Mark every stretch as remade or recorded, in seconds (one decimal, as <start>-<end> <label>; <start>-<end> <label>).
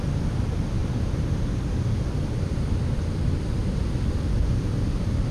0.0-5.3 recorded